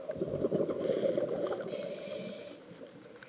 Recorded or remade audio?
remade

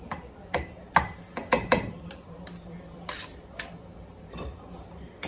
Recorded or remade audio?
remade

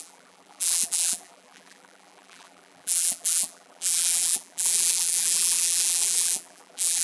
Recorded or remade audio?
remade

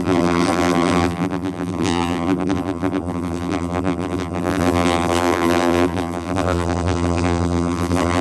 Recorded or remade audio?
remade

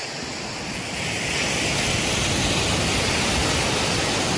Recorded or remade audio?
recorded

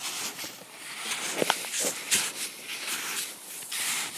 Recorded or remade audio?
remade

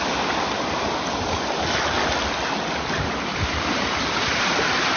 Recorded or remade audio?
remade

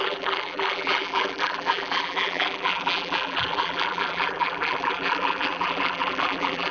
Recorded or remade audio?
remade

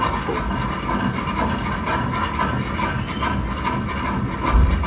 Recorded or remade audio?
recorded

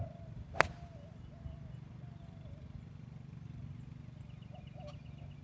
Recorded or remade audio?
recorded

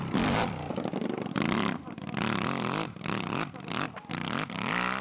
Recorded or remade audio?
remade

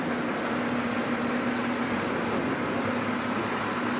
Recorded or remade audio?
recorded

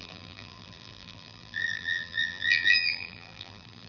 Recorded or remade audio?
remade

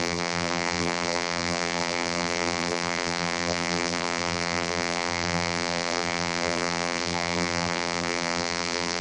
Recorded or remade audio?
remade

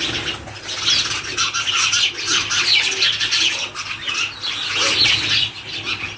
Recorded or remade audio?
recorded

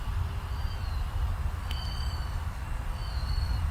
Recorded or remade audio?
recorded